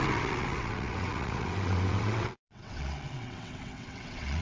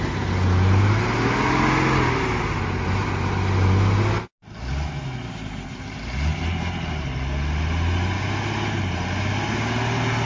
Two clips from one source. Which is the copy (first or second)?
first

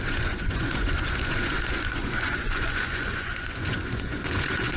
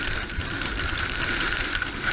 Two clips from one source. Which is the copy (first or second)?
first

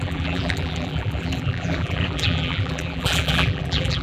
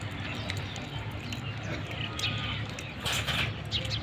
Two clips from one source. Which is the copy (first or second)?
first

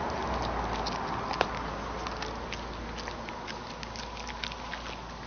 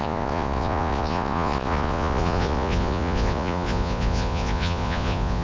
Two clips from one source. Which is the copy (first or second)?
second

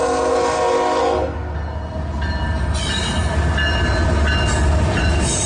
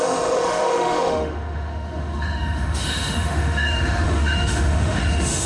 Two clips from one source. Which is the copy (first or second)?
second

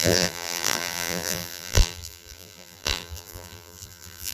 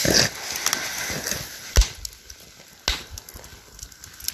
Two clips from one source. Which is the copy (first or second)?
first